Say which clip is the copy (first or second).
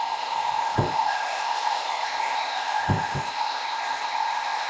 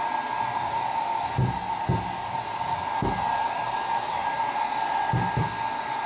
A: first